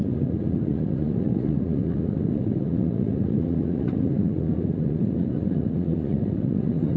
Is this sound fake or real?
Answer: fake